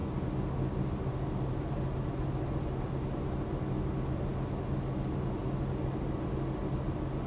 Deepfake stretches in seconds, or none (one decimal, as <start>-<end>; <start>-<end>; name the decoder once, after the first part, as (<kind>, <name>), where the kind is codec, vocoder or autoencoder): none

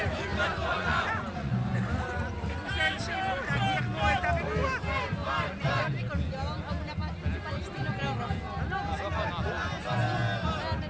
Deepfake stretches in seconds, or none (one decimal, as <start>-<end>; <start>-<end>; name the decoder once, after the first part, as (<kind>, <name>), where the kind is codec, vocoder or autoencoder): 0.7-1.8 (vocoder, Vocos)

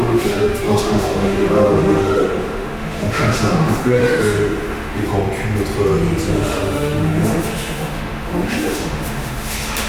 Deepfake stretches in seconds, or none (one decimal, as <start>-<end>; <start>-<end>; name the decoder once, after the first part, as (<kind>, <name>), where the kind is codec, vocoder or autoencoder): 0.0-5.0 (autoencoder, DAC-VAE); 6.3-9.9

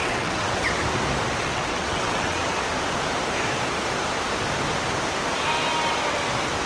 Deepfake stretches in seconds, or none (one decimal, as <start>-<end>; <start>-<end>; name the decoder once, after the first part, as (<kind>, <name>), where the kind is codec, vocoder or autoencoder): 0.0-0.8 (vocoder, WaveNeXt); 1.4-2.4